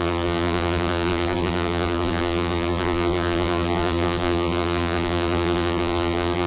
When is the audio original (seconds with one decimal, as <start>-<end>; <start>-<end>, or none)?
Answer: none